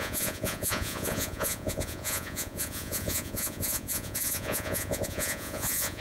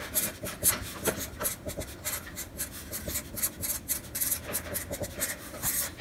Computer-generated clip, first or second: first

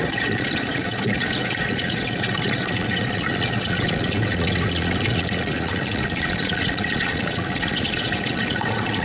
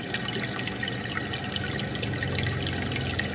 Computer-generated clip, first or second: first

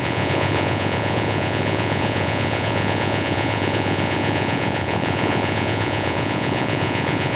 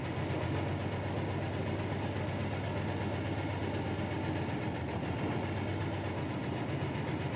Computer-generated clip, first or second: first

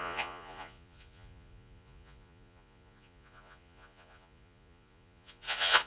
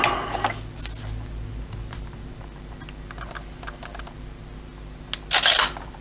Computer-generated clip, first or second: first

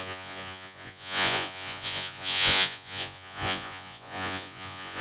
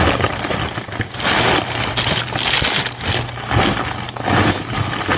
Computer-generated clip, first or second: first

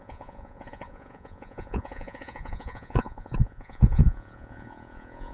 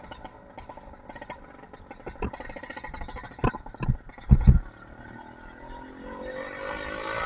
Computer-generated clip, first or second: first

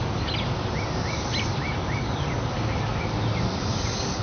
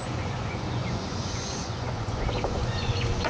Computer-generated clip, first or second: second